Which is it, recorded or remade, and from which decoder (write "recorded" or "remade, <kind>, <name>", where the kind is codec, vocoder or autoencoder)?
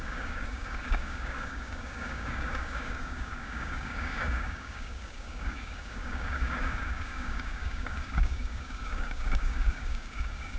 remade, codec, DAC